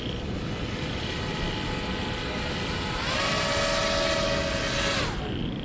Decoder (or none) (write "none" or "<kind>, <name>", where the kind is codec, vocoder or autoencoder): none